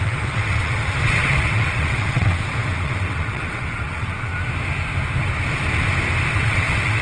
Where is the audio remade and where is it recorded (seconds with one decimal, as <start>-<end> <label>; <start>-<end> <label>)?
0.0-4.3 remade; 4.3-6.3 recorded; 6.3-7.0 remade

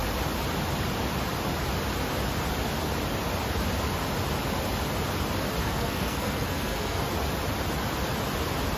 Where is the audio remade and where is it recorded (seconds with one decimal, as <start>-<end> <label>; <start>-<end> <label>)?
0.0-5.6 recorded; 5.6-7.0 remade; 7.0-8.8 recorded

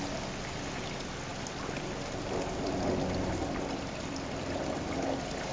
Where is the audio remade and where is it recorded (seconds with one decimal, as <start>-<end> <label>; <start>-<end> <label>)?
0.0-1.3 recorded; 1.3-4.6 remade; 4.6-5.5 recorded